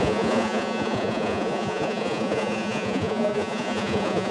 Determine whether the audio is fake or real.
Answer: fake